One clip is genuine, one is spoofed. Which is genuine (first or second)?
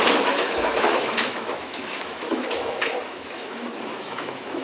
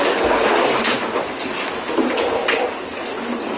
second